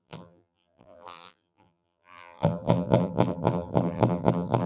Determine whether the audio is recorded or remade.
remade